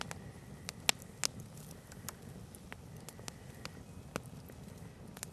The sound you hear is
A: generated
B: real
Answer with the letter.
B